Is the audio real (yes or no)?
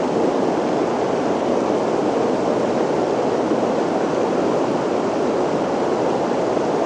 yes